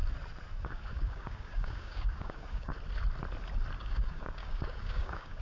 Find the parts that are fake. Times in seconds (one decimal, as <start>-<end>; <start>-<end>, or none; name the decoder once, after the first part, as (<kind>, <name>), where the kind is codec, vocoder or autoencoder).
0.6-2.7 (codec, DAC); 3.8-5.4

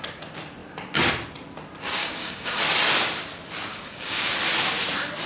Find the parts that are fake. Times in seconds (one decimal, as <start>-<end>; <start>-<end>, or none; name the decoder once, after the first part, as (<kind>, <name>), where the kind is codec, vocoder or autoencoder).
2.0-2.6 (codec, DAC); 3.7-4.3

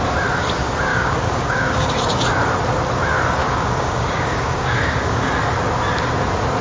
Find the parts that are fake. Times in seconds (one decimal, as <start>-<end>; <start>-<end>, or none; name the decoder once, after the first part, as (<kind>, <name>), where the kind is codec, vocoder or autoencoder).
0.9-1.9 (codec, DAC); 3.4-5.3

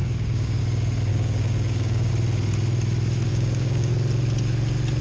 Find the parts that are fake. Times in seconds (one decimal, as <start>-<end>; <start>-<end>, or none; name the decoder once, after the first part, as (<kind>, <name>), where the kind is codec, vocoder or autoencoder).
0.0-0.6 (codec, DAC); 1.1-2.1; 3.3-3.9

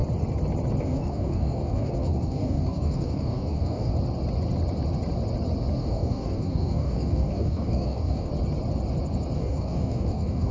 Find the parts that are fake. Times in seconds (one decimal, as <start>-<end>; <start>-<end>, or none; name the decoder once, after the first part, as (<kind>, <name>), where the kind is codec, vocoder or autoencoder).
0.8-3.9 (codec, DAC); 5.7-8.3; 9.4-10.5

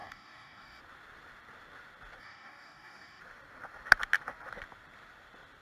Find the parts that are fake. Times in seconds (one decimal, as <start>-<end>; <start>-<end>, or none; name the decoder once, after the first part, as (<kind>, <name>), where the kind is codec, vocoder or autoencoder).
0.0-0.8 (codec, DAC); 2.2-3.2

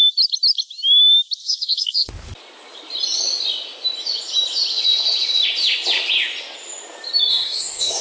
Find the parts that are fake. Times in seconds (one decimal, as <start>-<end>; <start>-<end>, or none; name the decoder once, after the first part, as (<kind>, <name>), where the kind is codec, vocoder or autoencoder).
1.4-2.1 (codec, DAC); 7.3-8.0

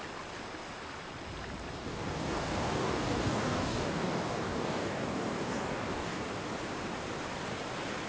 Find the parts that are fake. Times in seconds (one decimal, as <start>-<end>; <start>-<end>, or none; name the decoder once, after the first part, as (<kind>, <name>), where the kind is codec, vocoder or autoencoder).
1.8-6.2 (codec, DAC)